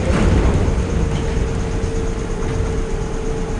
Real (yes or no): yes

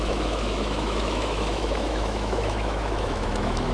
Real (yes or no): no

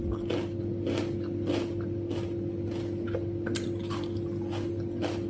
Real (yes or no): yes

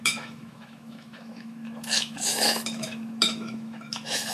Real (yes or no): no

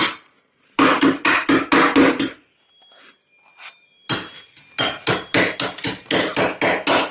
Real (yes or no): yes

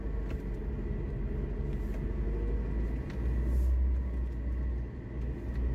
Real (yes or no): yes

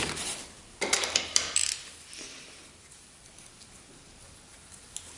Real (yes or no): yes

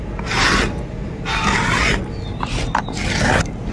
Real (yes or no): yes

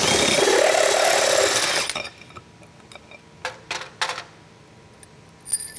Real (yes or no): yes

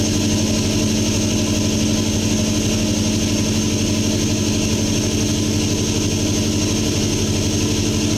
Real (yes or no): yes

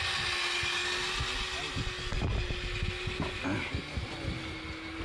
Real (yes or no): yes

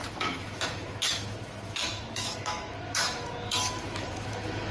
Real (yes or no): no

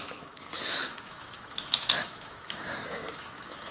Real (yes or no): no